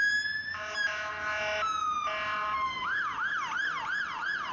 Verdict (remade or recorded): recorded